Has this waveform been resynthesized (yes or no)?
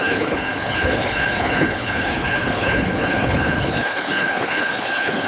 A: yes